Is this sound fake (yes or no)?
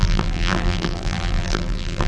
yes